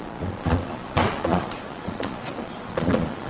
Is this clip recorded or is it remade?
remade